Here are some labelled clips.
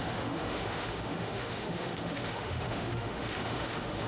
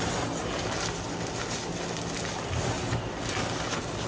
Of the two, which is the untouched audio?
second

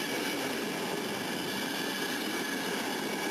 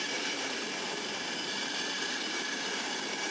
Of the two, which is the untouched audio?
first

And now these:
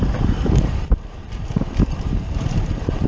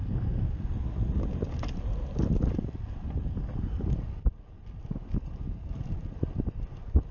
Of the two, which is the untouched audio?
second